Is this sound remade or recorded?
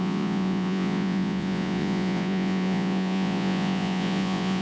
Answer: remade